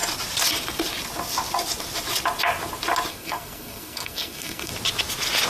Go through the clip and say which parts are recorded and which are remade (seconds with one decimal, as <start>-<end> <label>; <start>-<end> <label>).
0.0-3.1 recorded; 3.1-4.7 remade; 4.7-5.5 recorded